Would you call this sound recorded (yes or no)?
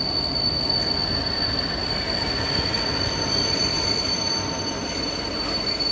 yes